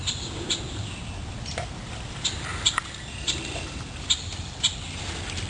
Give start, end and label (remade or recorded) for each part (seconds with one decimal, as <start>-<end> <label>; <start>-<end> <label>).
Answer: 0.0-2.5 recorded; 2.5-5.5 remade